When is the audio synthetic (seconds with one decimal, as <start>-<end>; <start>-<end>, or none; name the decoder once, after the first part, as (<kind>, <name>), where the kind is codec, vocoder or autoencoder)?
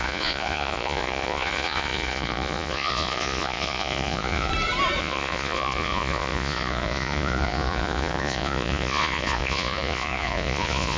0.0-4.5 (vocoder, Vocos); 5.0-11.0